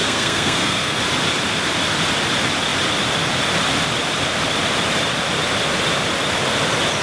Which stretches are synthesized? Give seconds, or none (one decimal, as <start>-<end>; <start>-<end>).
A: 0.0-1.0